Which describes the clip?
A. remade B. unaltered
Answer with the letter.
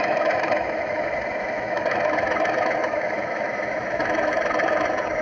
A